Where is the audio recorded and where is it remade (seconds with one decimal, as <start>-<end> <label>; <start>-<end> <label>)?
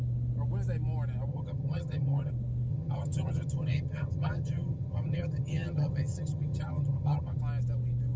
0.0-1.3 recorded; 1.3-2.3 remade; 2.3-2.7 recorded; 2.7-7.4 remade; 7.4-8.2 recorded